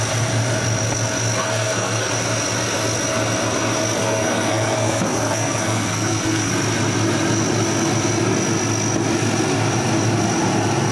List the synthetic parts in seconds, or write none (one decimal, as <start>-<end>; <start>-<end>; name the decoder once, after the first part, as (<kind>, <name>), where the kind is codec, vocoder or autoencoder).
1.4-2.1 (codec, SNAC); 4.0-6.5